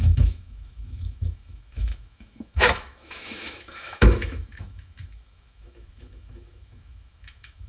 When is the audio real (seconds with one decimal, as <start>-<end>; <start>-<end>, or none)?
none